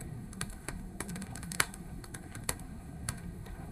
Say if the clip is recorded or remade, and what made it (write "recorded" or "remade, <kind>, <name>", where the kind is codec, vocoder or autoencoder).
remade, codec, SNAC